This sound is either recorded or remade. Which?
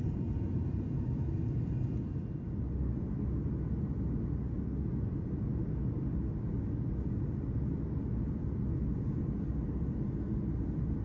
recorded